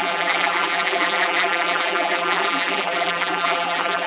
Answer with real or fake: fake